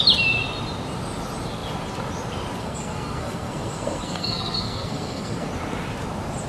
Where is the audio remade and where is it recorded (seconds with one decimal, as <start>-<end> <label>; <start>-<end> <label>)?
0.0-2.6 recorded; 2.6-5.5 remade; 5.5-6.5 recorded